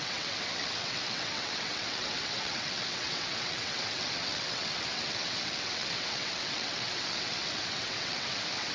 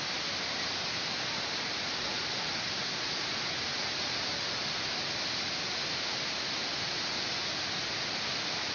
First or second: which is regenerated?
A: first